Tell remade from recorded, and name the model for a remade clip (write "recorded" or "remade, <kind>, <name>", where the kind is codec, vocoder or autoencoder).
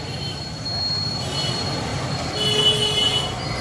recorded